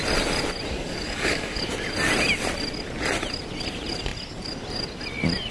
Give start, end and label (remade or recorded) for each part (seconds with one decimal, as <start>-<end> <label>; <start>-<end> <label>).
0.0-0.7 recorded; 0.7-1.6 remade; 1.6-5.5 recorded